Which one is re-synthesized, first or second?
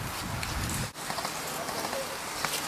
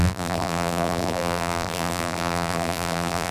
second